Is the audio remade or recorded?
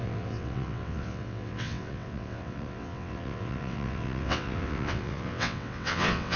remade